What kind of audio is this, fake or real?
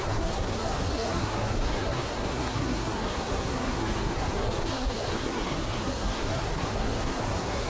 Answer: fake